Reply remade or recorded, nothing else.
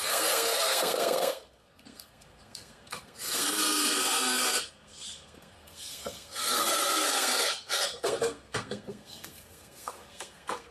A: remade